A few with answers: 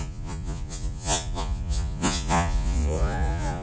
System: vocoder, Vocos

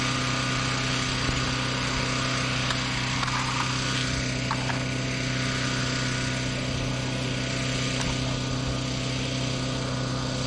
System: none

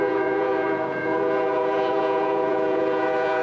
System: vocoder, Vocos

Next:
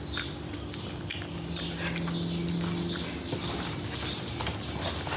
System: none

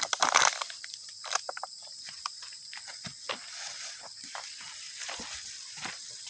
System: none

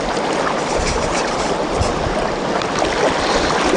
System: none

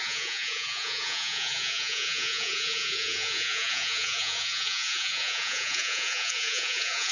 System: vocoder, Vocos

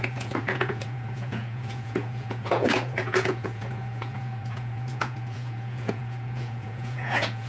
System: vocoder, Vocos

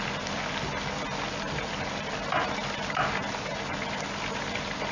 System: none